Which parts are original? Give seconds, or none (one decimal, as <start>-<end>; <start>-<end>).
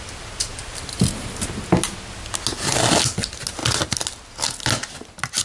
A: 0.0-5.4